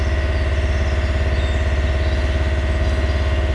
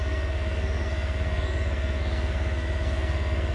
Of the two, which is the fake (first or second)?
second